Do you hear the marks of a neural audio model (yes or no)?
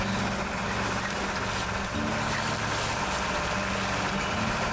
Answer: no